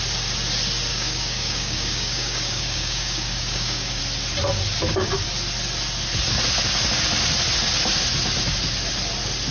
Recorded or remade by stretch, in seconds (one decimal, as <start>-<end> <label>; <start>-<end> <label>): 0.0-0.9 recorded; 0.9-4.0 remade; 4.0-9.5 recorded